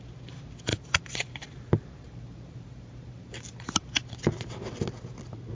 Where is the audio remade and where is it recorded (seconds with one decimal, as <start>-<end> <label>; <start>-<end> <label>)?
0.0-0.7 recorded; 0.7-3.9 remade; 3.9-5.5 recorded